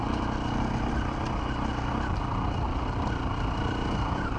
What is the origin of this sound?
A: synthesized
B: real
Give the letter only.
B